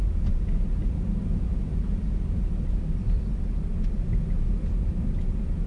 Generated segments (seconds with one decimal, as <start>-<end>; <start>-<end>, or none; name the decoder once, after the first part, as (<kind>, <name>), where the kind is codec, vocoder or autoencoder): 0.8-3.2 (vocoder, BigVGAN v2)